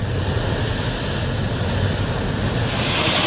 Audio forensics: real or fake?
real